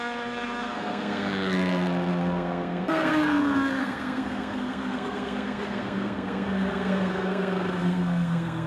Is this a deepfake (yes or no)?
yes